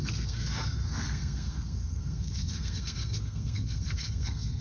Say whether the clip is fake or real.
fake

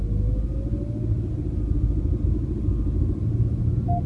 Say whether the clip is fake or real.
real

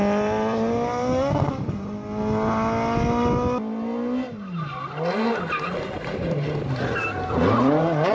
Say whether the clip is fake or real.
real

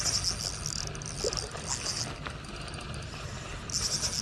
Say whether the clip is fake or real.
real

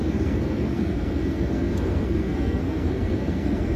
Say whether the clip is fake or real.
fake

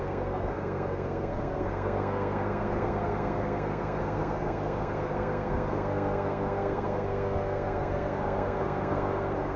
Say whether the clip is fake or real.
fake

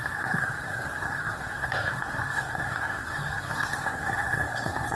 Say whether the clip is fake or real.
fake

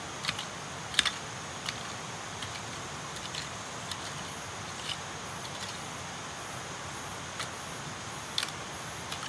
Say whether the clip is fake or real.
real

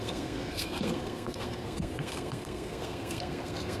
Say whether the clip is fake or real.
fake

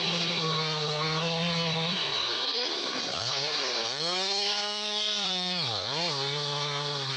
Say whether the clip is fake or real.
fake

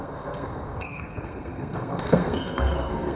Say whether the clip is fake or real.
fake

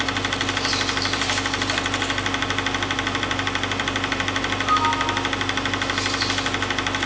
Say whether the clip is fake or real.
real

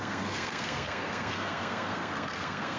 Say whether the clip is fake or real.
fake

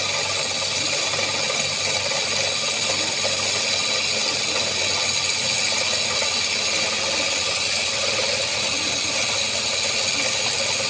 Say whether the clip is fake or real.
real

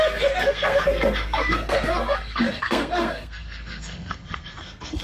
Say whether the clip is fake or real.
fake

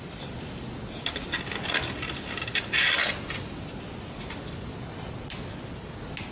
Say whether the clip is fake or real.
real